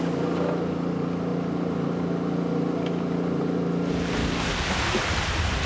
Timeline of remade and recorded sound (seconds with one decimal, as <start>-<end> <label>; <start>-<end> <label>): 0.0-4.2 recorded; 4.2-4.7 remade; 4.7-5.7 recorded